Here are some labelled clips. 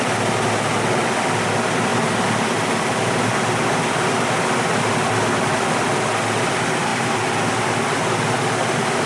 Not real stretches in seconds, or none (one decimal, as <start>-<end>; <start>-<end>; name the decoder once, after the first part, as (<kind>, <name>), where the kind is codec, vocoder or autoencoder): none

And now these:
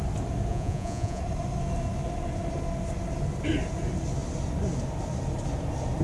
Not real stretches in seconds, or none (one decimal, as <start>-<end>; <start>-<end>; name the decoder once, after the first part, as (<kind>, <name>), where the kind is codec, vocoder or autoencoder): 0.5-1.2 (vocoder, Vocos)

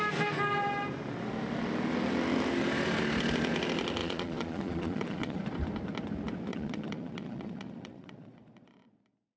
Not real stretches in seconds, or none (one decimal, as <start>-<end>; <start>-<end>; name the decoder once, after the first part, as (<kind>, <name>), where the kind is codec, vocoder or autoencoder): 4.0-5.4 (vocoder, Vocos); 6.5-9.0

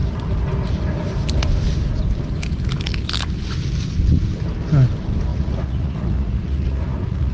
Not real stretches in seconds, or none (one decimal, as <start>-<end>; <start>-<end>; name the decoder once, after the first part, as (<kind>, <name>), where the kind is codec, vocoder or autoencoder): 5.3-7.3 (vocoder, Vocos)

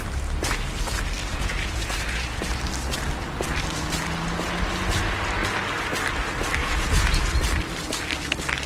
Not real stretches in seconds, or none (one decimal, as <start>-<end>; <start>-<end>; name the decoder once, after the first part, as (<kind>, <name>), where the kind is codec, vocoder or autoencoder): 1.3-2.6 (vocoder, Vocos); 6.6-7.3